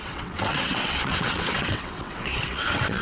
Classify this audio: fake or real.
fake